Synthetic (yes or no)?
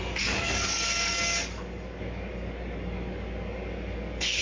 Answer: yes